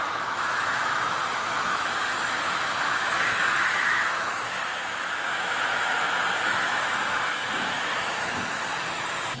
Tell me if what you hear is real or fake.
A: fake